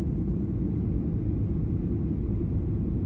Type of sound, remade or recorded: recorded